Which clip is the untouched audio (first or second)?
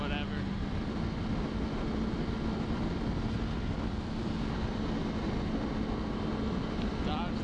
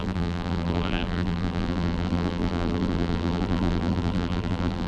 first